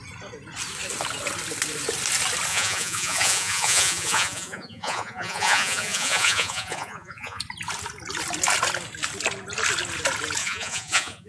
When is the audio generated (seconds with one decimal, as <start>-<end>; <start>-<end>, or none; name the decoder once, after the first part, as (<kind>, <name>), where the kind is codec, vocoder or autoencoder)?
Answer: 2.5-7.4 (vocoder, Vocos); 10.4-11.3